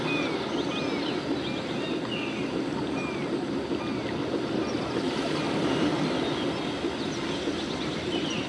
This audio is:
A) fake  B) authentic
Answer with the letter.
B